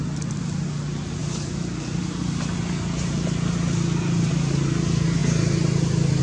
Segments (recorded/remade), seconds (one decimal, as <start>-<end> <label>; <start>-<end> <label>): 0.0-6.2 recorded